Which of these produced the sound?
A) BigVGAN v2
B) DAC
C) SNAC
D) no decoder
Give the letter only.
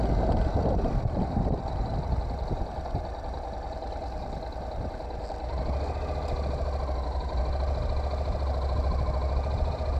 D